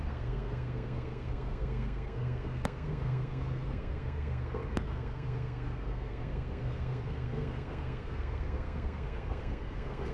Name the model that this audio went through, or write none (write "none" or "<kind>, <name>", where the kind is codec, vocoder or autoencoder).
codec, SNAC